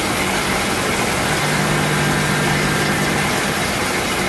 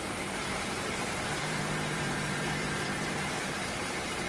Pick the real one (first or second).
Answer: first